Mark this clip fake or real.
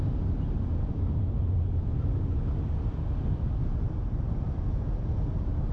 real